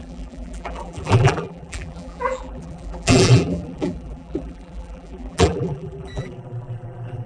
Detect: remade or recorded remade